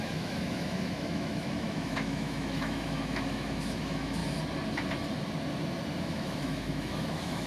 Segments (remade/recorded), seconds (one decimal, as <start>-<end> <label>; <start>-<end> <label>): 0.0-4.2 remade; 4.2-6.0 recorded; 6.0-7.5 remade